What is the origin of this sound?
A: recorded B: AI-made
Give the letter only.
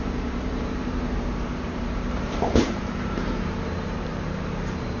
B